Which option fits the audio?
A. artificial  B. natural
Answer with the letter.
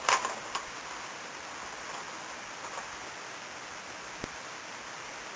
B